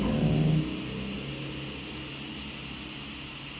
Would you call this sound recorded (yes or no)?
yes